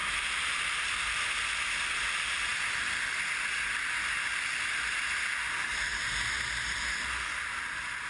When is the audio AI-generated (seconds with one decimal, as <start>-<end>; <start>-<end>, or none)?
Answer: none